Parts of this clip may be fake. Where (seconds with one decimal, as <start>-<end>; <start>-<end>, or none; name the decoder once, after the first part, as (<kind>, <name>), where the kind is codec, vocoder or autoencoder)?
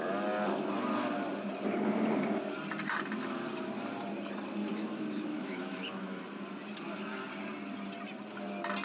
4.7-6.2 (autoencoder, DAC-VAE)